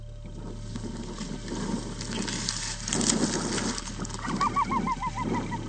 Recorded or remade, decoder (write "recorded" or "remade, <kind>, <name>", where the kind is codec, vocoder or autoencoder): recorded